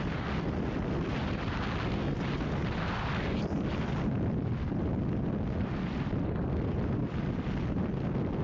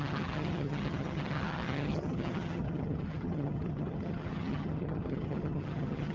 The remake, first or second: second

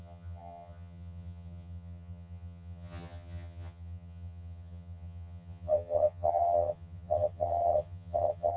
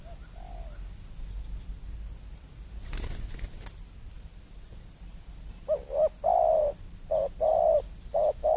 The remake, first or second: first